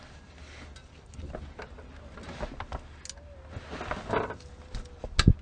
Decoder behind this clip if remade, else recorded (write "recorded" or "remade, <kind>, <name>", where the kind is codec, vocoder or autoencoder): recorded